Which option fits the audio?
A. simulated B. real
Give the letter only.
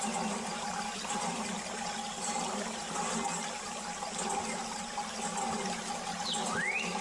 B